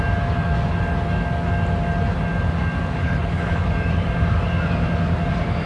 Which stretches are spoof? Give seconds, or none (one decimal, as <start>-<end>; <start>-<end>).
3.0-3.6